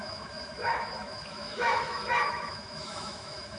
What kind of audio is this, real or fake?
fake